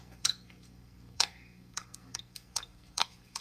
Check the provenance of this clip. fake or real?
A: fake